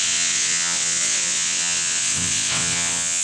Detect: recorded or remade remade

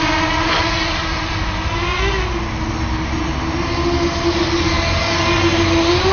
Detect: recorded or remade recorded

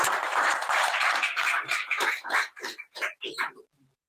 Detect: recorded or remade remade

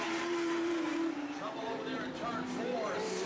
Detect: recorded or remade remade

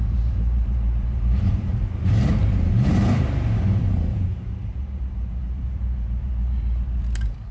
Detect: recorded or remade remade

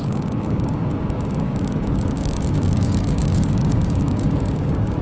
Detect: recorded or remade remade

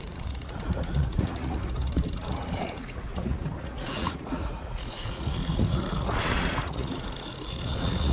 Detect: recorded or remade remade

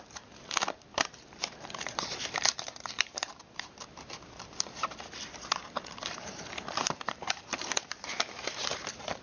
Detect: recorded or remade remade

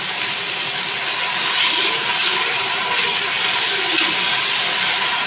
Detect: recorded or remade recorded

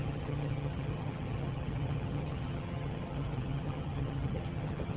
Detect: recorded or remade remade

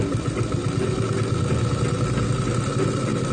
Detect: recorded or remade recorded